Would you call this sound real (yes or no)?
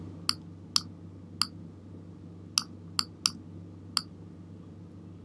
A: yes